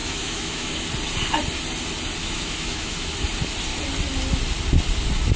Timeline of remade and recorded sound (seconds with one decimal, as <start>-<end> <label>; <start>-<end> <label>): 0.0-0.9 remade; 0.9-2.2 recorded; 2.2-3.1 remade; 3.1-5.4 recorded